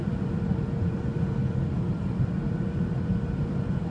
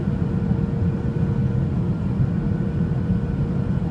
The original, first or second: second